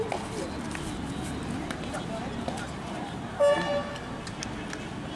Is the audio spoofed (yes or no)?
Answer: no